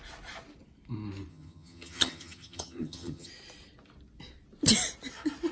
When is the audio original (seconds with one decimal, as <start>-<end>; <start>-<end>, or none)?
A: 0.0-1.3; 3.3-5.5